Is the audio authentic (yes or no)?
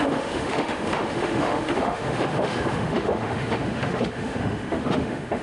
no